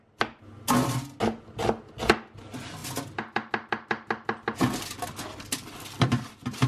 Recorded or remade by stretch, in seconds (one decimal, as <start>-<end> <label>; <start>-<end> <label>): 0.0-6.7 recorded